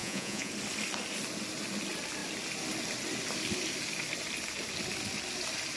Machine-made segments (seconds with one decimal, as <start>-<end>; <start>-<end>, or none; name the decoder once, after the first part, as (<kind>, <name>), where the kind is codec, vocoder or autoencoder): 0.0-0.5 (vocoder, Vocos)